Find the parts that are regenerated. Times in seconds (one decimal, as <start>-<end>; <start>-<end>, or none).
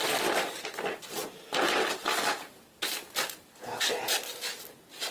none